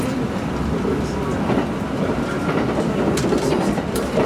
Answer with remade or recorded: recorded